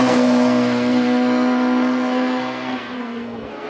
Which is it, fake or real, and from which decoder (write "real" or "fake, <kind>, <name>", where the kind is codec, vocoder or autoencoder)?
fake, codec, SNAC